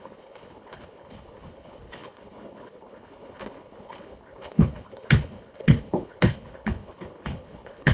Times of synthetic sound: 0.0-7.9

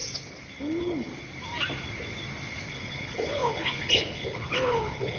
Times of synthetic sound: 0.6-1.1; 2.7-5.2